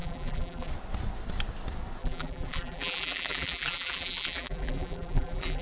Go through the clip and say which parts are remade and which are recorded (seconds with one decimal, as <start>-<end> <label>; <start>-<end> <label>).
0.0-0.7 remade; 0.7-2.0 recorded; 2.0-5.6 remade